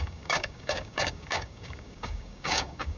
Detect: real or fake fake